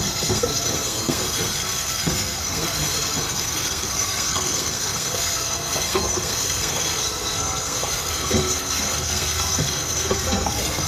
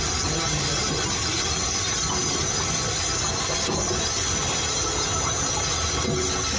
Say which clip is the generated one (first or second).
first